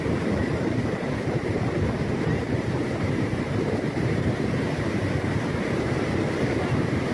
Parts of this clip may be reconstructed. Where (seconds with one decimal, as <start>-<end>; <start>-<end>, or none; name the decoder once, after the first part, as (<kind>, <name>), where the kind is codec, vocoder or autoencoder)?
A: 0.4-4.3 (vocoder, BigVGAN v2)